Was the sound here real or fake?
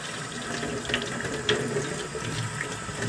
fake